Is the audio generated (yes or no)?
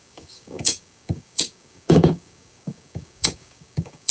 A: yes